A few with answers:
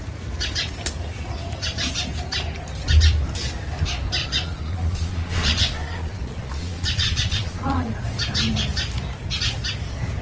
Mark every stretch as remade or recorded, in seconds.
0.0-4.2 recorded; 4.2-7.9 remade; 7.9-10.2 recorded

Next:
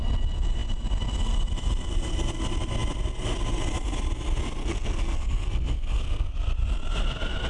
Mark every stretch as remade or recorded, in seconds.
0.0-4.6 recorded; 4.6-6.3 remade; 6.3-7.5 recorded

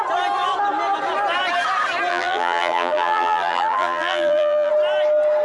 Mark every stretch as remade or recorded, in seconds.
0.0-2.1 recorded; 2.1-4.7 remade; 4.7-5.4 recorded

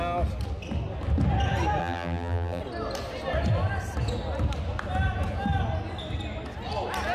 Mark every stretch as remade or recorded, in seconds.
0.0-1.8 recorded; 1.8-2.6 remade; 2.6-7.1 recorded